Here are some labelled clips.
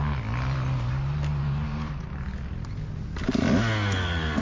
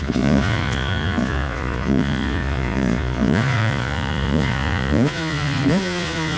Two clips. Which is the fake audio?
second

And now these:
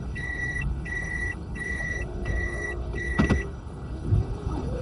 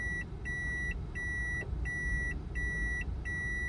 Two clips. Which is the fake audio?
first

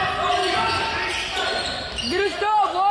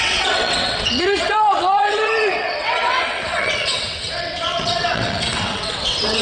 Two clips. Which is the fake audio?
second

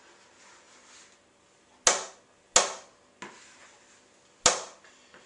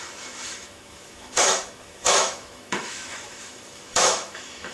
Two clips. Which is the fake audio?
second